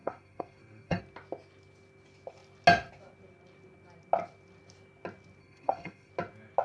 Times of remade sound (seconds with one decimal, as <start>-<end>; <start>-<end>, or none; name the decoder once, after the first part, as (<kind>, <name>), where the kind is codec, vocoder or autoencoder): 0.0-1.0 (codec, SNAC); 5.4-6.1